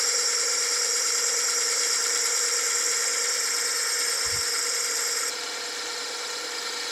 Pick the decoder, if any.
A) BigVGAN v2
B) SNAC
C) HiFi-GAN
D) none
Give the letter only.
D